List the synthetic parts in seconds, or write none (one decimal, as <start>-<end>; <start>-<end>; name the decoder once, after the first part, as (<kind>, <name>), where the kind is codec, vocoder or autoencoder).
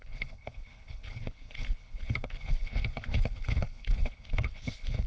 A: 0.0-5.1 (codec, HILCodec)